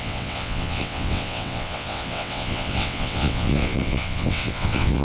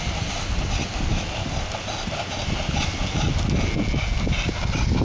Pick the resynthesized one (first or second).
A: first